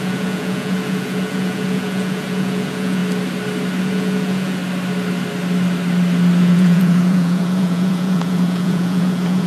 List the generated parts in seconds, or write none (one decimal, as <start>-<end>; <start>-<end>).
0.0-3.0; 3.8-4.6; 6.4-9.5